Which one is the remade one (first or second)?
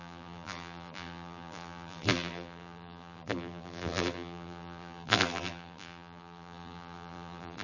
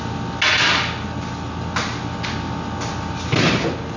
first